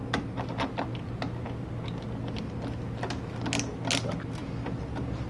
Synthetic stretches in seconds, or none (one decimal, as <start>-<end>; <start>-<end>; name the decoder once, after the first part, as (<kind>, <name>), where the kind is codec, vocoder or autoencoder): none